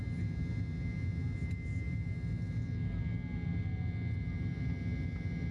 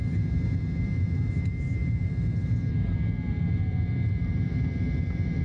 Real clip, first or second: first